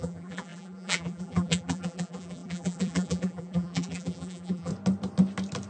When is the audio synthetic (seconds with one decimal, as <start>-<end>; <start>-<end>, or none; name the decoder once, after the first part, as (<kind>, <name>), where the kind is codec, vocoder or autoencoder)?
0.0-4.7 (vocoder, BigVGAN v2)